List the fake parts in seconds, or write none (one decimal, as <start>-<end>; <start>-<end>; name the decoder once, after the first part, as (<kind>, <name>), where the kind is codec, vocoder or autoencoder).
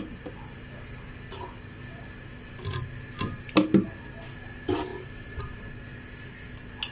none